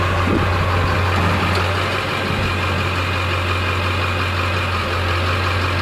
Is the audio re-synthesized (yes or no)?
no